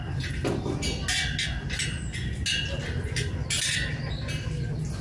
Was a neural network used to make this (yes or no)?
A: no